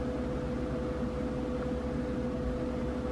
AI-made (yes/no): no